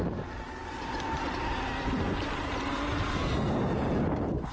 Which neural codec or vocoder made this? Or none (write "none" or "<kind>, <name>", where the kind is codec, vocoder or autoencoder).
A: none